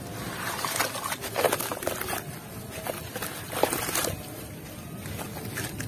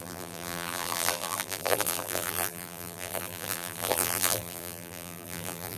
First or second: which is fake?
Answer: second